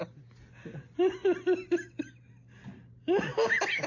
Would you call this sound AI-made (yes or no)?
no